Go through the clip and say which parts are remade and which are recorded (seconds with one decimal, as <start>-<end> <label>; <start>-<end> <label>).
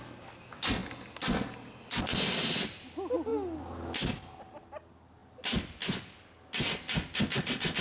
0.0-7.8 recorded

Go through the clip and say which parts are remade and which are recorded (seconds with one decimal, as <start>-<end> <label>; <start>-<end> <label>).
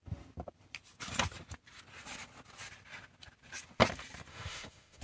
0.0-4.3 recorded; 4.3-5.0 remade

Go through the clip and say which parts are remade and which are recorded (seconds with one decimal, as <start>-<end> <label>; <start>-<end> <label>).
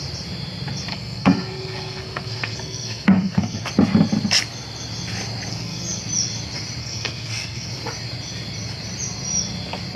0.0-0.9 recorded; 0.9-3.7 remade; 3.7-5.5 recorded; 5.5-6.0 remade; 6.0-6.8 recorded; 6.8-7.7 remade; 7.7-10.0 recorded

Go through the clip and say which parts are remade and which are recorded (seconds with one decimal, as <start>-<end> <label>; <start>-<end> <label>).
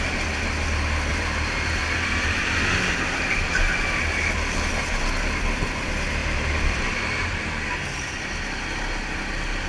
0.0-1.1 recorded; 1.1-2.4 remade; 2.4-6.2 recorded; 6.2-7.7 remade; 7.7-9.7 recorded